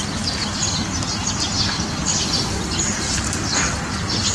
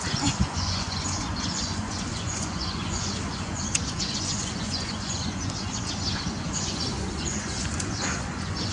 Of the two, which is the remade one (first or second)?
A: second